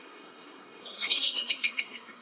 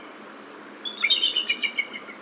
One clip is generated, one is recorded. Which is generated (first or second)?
first